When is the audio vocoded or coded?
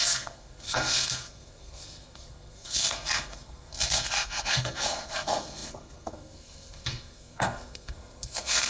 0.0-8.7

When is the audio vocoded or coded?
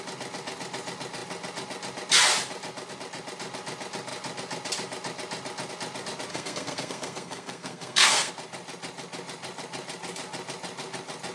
6.3-8.3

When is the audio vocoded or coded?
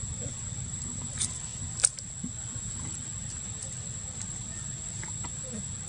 none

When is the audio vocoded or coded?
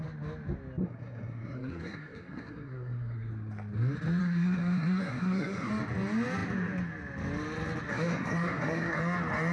0.8-3.3; 4.2-5.7; 7.9-9.0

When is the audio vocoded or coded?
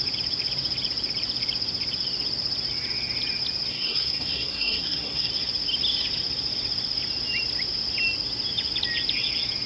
3.7-5.3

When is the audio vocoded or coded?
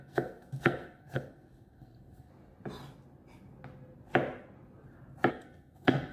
0.0-2.3; 5.3-6.1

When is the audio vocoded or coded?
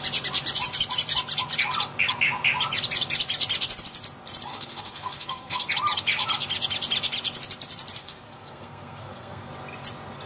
4.5-5.7; 8.0-9.5